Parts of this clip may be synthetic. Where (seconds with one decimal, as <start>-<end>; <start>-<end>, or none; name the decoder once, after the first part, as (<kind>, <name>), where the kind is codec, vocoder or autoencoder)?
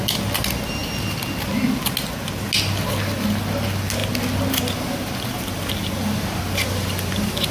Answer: none